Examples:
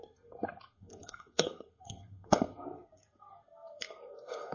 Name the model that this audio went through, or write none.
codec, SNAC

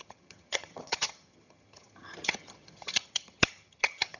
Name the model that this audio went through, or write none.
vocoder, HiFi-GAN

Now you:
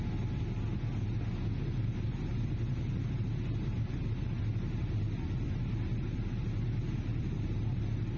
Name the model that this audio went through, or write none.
none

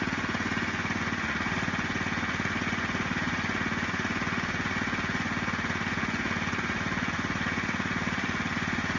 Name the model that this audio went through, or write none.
vocoder, Vocos